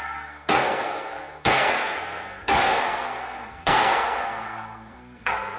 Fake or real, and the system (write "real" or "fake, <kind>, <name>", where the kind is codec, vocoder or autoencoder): fake, codec, SNAC